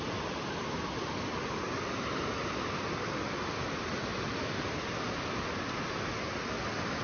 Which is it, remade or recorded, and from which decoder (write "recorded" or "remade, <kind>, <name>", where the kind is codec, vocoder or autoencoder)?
recorded